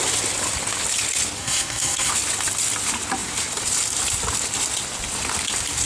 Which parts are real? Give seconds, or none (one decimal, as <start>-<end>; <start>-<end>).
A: 0.0-1.4; 2.1-5.9